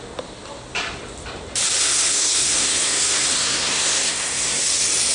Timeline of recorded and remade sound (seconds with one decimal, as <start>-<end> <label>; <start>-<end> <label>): 0.0-1.8 recorded; 1.8-4.6 remade; 4.6-5.1 recorded